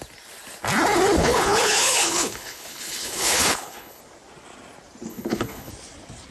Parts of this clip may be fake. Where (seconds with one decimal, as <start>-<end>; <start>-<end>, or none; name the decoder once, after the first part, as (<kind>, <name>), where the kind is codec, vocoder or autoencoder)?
1.2-4.0 (codec, HILCodec); 5.1-5.7